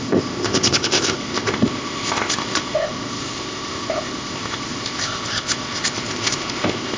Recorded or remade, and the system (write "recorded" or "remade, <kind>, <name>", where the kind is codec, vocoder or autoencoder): remade, codec, ZipCodec